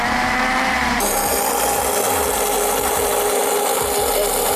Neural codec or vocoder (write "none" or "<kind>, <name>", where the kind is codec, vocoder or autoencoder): none